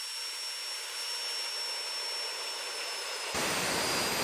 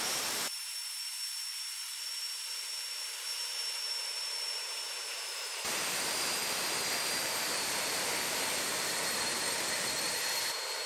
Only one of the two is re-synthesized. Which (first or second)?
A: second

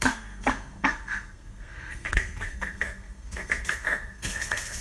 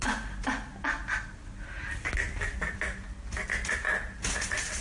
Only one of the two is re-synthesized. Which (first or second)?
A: first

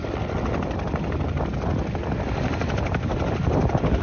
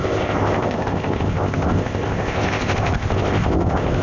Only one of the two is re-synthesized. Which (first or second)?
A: second